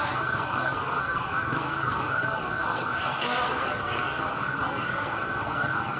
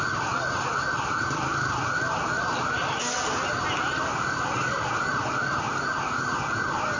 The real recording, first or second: second